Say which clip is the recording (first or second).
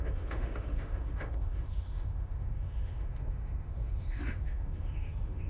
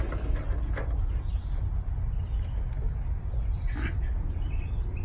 second